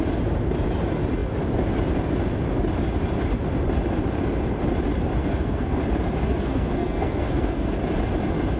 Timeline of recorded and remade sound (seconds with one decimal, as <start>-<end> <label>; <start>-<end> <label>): 0.0-5.2 recorded; 5.2-5.8 remade; 5.8-6.2 recorded; 6.2-7.8 remade; 7.8-8.6 recorded